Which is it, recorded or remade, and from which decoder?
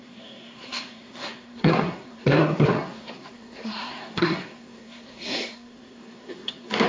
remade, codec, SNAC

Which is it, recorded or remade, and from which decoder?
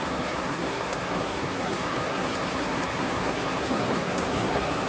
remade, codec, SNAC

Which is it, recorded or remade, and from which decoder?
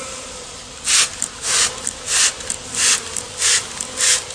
recorded